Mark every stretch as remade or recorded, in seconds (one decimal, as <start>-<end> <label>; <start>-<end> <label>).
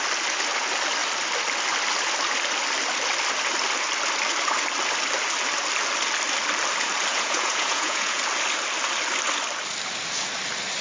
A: 0.0-7.1 recorded; 7.1-8.2 remade; 8.2-10.8 recorded